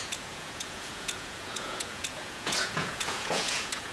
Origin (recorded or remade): remade